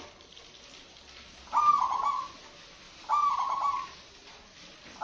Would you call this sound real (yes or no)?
yes